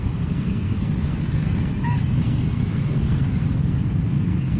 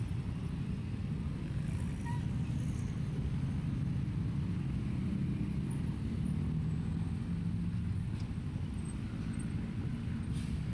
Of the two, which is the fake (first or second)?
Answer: first